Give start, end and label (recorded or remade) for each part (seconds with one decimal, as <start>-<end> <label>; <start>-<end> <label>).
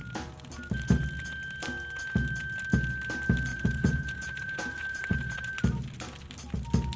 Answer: 0.0-3.5 recorded; 3.5-5.5 remade; 5.5-7.0 recorded